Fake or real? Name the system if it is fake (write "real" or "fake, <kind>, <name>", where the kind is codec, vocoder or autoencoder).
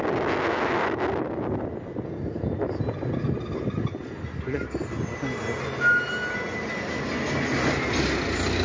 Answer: real